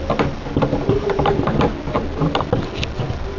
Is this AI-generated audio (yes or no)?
no